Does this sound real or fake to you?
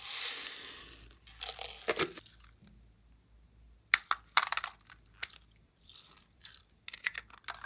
real